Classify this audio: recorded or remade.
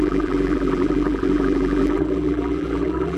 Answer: remade